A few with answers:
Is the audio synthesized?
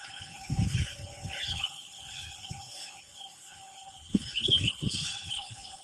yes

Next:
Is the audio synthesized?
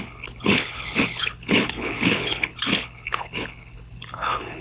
yes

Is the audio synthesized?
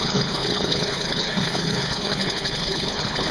yes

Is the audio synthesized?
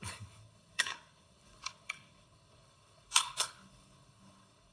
yes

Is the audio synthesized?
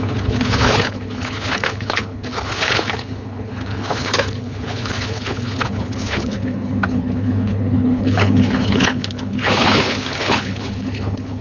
yes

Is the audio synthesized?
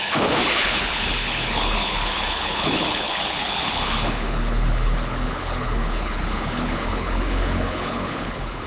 yes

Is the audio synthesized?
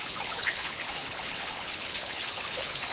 yes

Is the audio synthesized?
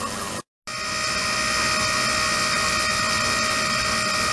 no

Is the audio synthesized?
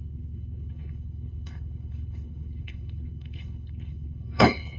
yes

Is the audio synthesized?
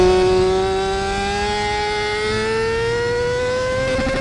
no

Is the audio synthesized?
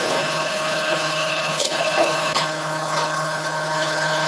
yes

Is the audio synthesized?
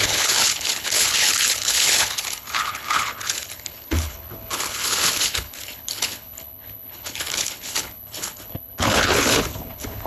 yes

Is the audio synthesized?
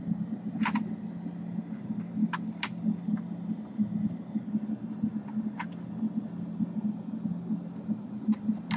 no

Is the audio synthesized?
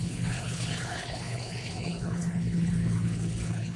yes